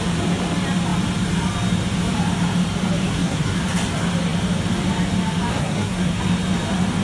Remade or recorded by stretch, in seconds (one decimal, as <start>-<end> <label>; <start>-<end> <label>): 0.0-3.1 recorded; 3.1-3.6 remade; 3.6-5.5 recorded; 5.5-6.2 remade; 6.2-7.0 recorded

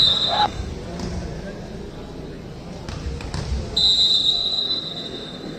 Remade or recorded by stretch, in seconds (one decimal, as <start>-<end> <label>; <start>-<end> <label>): 0.0-0.7 remade; 0.7-4.1 recorded; 4.1-5.6 remade

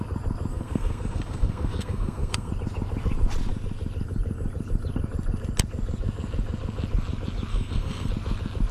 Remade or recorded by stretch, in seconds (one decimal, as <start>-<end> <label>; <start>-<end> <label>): 0.0-0.5 recorded; 0.5-2.5 remade; 2.5-7.5 recorded; 7.5-8.1 remade; 8.1-8.7 recorded

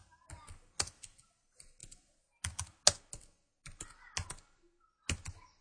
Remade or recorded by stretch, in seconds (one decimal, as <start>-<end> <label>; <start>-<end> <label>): 0.0-5.6 recorded

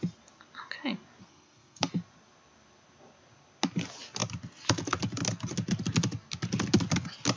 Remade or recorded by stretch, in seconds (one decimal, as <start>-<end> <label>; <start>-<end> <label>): 0.0-1.2 recorded; 1.2-1.9 remade; 1.9-7.4 recorded

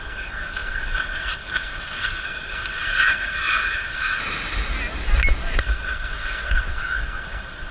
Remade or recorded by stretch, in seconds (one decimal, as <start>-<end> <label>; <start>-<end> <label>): 0.0-4.2 remade; 4.2-5.6 recorded; 5.6-7.7 remade

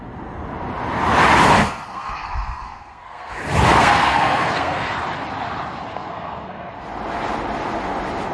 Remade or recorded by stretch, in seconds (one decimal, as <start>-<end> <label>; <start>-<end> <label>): 0.0-1.6 recorded; 1.6-3.3 remade; 3.3-3.7 recorded; 3.7-5.0 remade; 5.0-5.9 recorded; 5.9-6.7 remade; 6.7-8.3 recorded